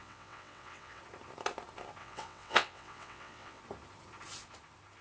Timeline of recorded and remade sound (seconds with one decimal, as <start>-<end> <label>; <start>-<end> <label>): 0.0-1.0 remade; 1.0-2.0 recorded; 2.0-3.6 remade; 3.6-5.0 recorded